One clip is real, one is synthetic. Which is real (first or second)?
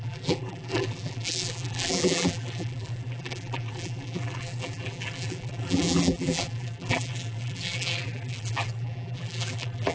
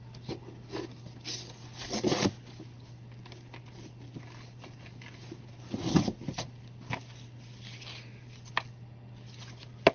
second